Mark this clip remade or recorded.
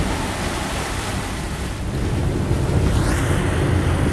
recorded